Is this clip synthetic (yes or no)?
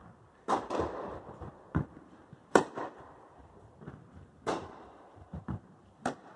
yes